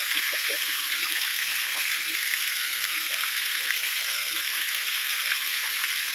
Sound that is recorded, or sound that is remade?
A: remade